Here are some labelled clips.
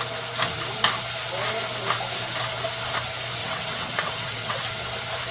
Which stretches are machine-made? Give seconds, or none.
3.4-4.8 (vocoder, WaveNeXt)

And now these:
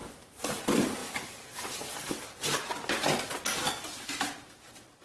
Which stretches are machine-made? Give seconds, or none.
0.6-2.6 (vocoder, BigVGAN v2)

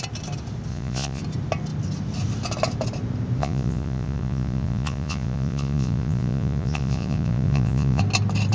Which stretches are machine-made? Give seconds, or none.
0.7-1.2 (vocoder, Vocos); 3.4-8.0

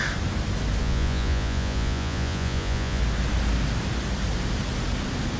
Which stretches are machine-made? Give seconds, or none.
0.8-3.0 (vocoder, Vocos)

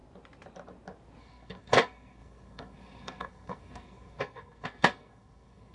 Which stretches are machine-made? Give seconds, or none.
1.2-5.7 (codec, SNAC)